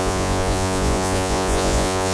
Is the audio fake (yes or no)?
yes